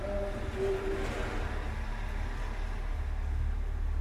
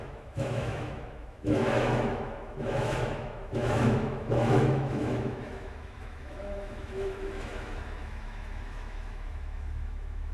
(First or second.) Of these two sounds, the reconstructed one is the second